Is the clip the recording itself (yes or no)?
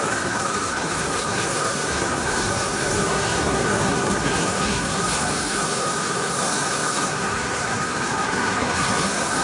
no